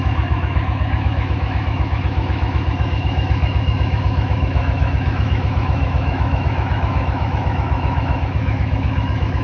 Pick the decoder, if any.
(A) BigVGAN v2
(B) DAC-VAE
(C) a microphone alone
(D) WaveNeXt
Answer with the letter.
B